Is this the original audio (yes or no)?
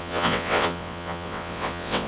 no